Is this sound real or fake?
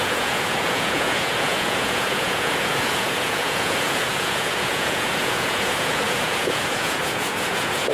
fake